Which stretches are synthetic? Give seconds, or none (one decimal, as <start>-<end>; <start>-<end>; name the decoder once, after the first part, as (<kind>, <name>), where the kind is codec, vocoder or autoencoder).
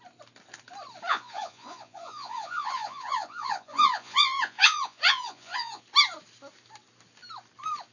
1.1-5.8 (vocoder, Vocos)